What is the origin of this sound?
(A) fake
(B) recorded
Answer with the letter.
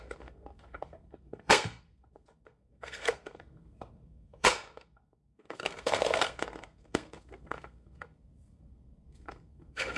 A